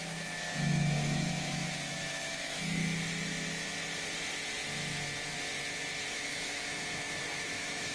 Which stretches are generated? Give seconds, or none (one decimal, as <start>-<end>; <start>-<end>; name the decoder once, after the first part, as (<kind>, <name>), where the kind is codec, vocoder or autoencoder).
0.0-2.8 (autoencoder, DAC-VAE); 6.0-7.9